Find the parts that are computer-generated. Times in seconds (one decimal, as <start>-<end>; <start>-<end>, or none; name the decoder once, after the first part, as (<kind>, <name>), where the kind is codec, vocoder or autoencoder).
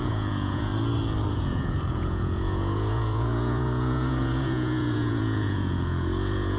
0.0-0.7 (vocoder, Vocos); 1.3-6.6